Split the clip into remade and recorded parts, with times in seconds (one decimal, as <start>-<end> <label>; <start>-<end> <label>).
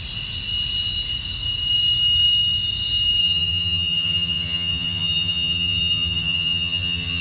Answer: 0.0-3.2 recorded; 3.2-7.2 remade